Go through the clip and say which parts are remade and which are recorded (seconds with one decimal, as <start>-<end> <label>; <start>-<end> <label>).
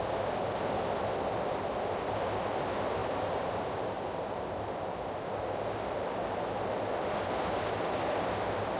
0.0-3.0 recorded; 3.0-4.0 remade; 4.0-8.8 recorded